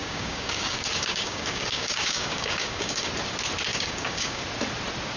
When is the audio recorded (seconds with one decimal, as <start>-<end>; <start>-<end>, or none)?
3.1-3.7; 4.4-5.2